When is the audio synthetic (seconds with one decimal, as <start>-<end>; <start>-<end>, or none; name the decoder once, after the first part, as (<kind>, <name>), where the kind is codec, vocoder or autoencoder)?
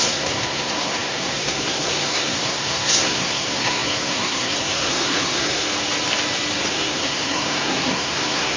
0.0-5.7 (codec, SNAC); 6.7-8.6